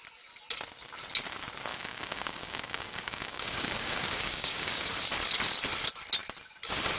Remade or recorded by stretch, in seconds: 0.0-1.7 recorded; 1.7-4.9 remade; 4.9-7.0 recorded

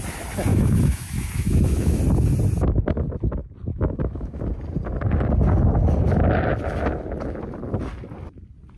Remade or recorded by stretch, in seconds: 0.0-0.5 recorded; 0.5-2.0 remade; 2.0-3.7 recorded; 3.7-4.4 remade; 4.4-8.8 recorded

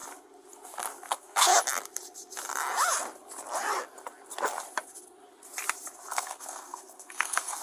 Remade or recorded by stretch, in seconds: 0.0-1.1 recorded; 1.1-1.5 remade; 1.5-6.1 recorded; 6.1-7.6 remade